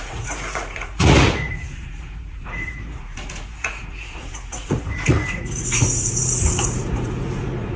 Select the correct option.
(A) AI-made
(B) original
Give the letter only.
A